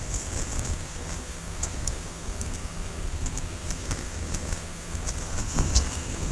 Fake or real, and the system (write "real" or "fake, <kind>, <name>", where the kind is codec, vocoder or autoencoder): fake, codec, SNAC